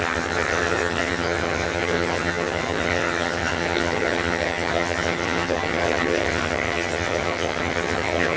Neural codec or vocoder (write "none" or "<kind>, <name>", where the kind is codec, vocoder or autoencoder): vocoder, HiFi-GAN